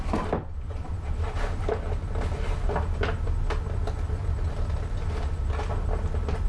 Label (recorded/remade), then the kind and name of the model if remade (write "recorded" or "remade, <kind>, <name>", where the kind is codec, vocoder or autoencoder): recorded